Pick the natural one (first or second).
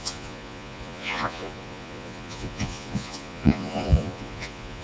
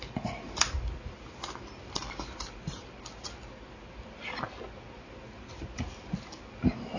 second